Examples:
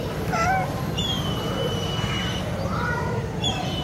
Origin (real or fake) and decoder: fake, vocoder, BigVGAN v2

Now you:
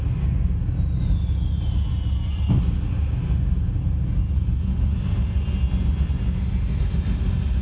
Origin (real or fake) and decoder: real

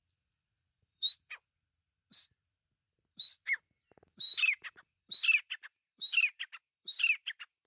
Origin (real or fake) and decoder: fake, vocoder, BigVGAN v2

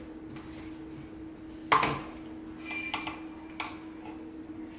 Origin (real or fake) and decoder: real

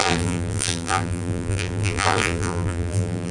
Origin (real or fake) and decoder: fake, vocoder, BigVGAN v2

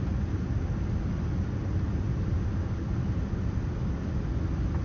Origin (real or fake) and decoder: real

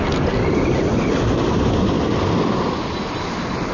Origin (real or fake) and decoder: real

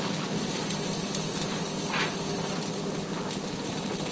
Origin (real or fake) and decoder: real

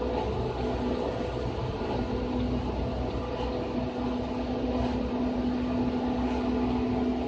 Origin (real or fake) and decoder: real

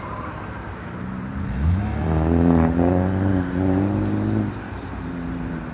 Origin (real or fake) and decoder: fake, vocoder, BigVGAN v2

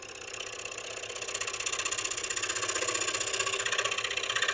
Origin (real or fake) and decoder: real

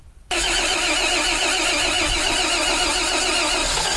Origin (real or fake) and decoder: fake, vocoder, BigVGAN v2